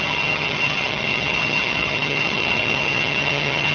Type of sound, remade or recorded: remade